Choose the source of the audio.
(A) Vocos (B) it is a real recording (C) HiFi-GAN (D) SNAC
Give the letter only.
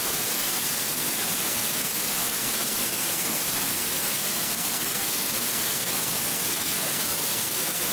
D